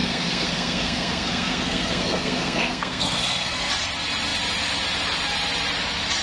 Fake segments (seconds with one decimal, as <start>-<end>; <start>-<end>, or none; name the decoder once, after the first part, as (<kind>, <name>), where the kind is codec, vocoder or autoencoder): 0.0-3.7 (codec, SNAC)